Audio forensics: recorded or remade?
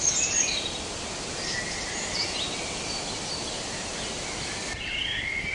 recorded